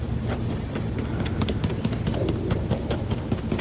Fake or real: real